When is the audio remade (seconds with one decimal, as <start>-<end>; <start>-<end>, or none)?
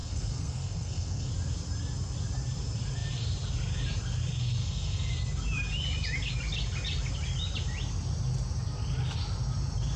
0.0-1.3; 4.6-5.1